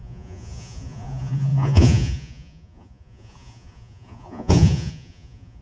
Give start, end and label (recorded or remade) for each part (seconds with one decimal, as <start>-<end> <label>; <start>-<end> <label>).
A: 0.0-5.6 remade